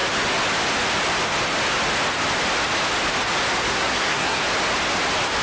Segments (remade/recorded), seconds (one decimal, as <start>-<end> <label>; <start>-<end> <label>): 0.0-3.7 recorded; 3.7-4.4 remade; 4.4-5.4 recorded